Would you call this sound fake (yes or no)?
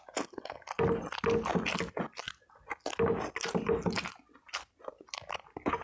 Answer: no